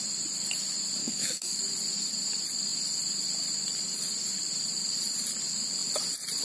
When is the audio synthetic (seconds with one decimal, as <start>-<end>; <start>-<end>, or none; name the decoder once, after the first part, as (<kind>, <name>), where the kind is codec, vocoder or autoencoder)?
1.0-1.6 (codec, SNAC)